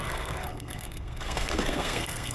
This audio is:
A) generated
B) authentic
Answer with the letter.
A